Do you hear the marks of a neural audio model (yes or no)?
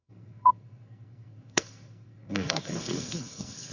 yes